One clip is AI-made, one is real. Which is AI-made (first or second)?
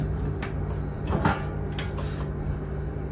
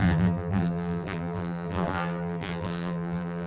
second